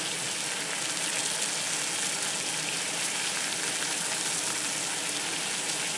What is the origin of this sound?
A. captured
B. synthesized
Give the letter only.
A